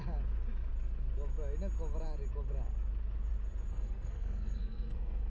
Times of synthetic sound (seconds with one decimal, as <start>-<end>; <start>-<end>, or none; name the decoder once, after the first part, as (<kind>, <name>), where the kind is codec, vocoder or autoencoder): 3.7-5.3 (codec, SNAC)